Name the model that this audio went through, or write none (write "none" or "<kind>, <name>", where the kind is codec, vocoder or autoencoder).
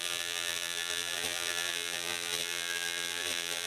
vocoder, BigVGAN v2